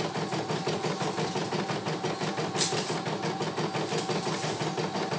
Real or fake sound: real